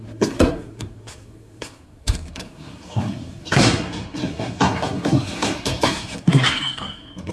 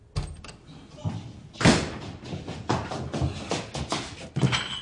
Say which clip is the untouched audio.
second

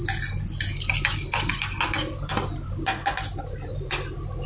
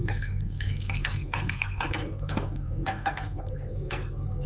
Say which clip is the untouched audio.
first